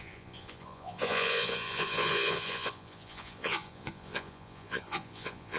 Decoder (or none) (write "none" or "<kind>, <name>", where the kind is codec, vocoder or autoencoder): vocoder, Vocos